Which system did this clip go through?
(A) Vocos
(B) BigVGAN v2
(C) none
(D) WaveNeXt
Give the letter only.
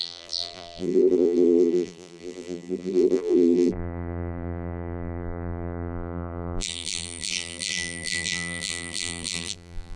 B